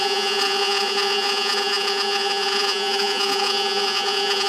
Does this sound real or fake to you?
fake